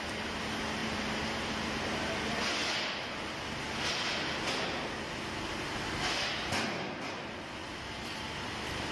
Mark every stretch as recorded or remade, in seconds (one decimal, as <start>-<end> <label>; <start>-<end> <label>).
0.0-0.8 recorded; 0.8-2.1 remade; 2.1-7.6 recorded; 7.6-8.5 remade; 8.5-8.9 recorded